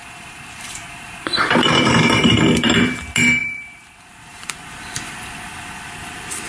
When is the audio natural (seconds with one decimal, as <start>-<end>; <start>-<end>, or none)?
3.0-3.4; 4.8-6.5